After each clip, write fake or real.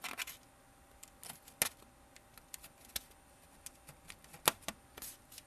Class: real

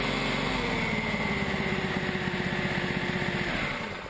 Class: real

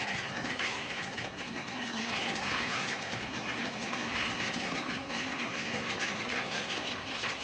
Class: fake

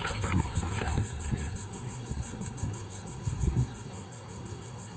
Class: fake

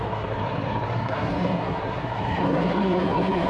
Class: fake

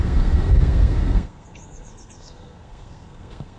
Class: fake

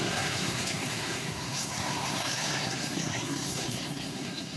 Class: fake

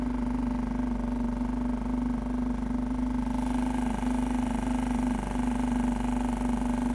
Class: real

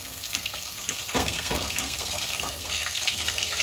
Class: fake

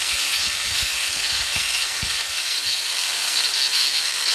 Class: fake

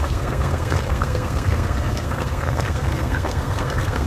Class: fake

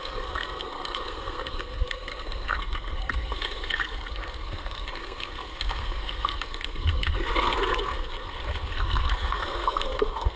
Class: fake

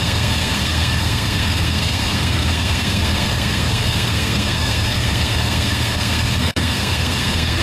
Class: fake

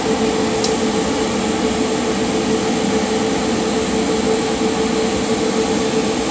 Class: real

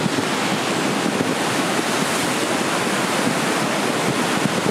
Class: real